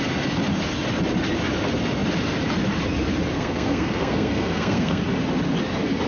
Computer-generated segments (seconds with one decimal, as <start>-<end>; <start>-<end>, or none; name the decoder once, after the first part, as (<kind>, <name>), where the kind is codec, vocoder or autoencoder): 3.3-5.0 (codec, SNAC)